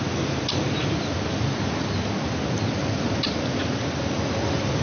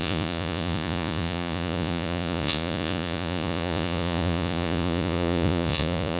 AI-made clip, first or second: second